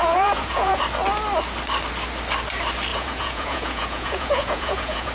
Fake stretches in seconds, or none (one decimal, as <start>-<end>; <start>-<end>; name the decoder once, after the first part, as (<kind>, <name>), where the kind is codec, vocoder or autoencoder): 0.0-0.8 (vocoder, Vocos); 2.9-5.1